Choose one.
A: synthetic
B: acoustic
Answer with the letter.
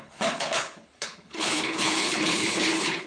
A